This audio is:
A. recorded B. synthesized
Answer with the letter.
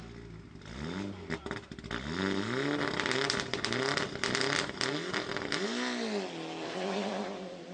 A